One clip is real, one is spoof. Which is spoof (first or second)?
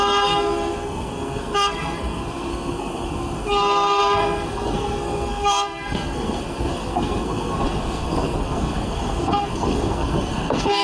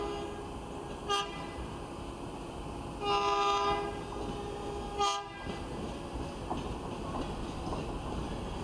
first